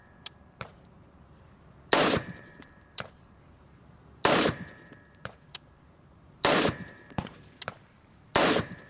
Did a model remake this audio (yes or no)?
yes